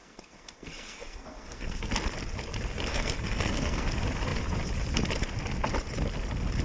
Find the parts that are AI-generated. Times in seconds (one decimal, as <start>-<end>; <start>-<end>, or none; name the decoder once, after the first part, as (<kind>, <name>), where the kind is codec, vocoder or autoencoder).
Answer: 0.0-1.9 (codec, SNAC); 2.9-3.9